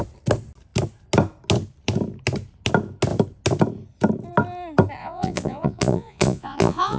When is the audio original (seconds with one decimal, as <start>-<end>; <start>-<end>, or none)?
0.0-5.0